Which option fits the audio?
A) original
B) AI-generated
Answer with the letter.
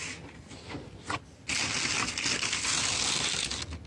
A